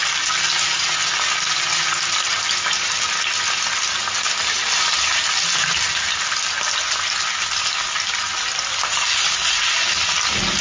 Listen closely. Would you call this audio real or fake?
real